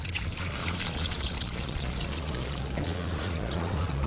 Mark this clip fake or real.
fake